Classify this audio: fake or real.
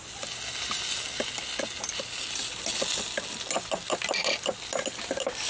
real